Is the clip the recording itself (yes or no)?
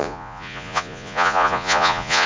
no